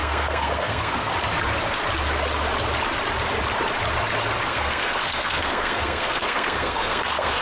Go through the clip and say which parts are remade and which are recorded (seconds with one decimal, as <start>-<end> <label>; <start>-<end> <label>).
0.0-1.1 remade; 1.1-4.5 recorded; 4.5-7.4 remade